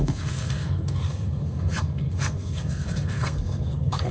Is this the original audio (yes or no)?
no